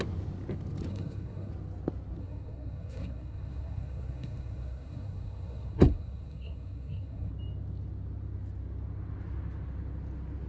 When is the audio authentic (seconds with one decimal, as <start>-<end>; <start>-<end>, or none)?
0.0-0.9; 1.5-2.2; 7.3-10.5